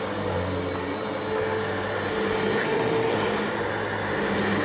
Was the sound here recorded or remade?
recorded